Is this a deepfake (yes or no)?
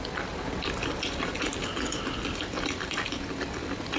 no